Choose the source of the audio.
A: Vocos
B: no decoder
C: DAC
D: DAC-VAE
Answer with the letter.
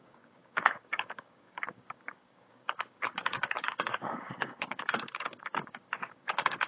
C